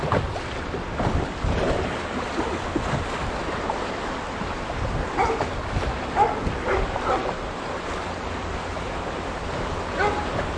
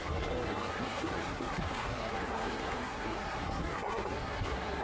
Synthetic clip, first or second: second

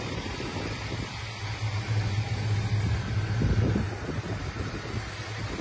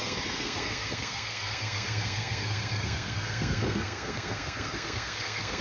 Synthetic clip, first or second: second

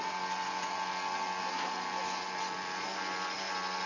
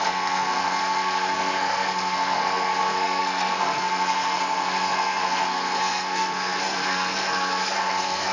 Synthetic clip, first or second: second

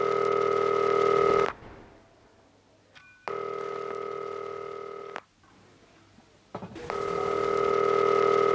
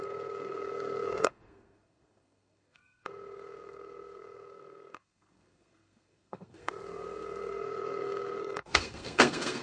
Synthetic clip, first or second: second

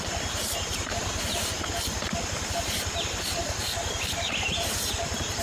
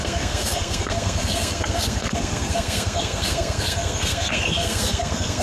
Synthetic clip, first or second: second